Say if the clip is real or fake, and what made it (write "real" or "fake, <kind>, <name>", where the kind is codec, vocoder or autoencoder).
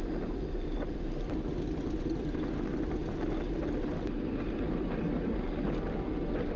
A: real